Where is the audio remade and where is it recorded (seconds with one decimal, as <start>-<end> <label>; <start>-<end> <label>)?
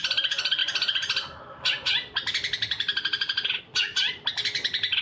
0.0-5.0 recorded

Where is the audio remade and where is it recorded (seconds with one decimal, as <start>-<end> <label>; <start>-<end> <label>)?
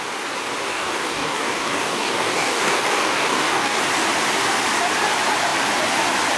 0.0-0.7 recorded; 0.7-3.8 remade; 3.8-6.4 recorded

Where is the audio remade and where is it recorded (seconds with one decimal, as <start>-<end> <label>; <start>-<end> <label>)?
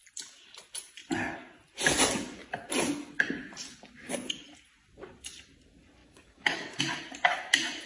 0.0-6.0 recorded; 6.0-6.8 remade; 6.8-7.9 recorded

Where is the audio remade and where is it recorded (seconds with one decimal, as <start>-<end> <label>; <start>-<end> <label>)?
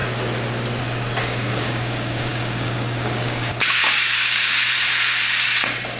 0.0-1.2 recorded; 1.2-4.7 remade; 4.7-6.0 recorded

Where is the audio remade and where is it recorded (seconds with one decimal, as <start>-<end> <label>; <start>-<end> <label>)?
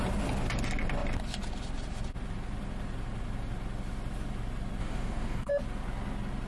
0.0-4.8 recorded; 4.8-5.5 remade; 5.5-6.5 recorded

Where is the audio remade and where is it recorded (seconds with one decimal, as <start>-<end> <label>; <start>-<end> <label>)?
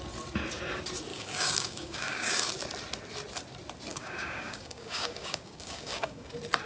0.0-1.1 recorded; 1.1-2.5 remade; 2.5-3.9 recorded; 3.9-6.3 remade; 6.3-6.7 recorded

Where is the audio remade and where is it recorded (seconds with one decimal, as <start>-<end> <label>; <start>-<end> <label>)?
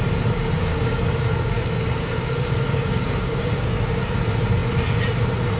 0.0-0.7 recorded; 0.7-4.1 remade; 4.1-5.6 recorded